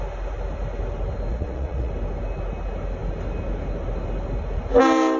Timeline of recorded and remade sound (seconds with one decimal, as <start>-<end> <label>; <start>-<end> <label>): 0.0-1.3 recorded; 1.3-1.9 remade; 1.9-5.2 recorded